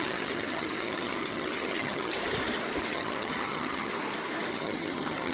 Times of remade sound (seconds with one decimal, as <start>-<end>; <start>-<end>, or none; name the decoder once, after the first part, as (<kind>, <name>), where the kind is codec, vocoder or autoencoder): 0.0-2.1 (vocoder, HiFi-GAN); 2.9-3.9; 4.5-5.3